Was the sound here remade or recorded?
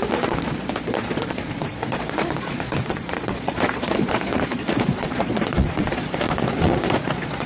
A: remade